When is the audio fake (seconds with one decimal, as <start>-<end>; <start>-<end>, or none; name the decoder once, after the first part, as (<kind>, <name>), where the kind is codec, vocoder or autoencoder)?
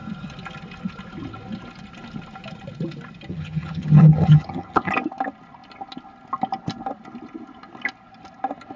3.3-4.9 (vocoder, HiFi-GAN)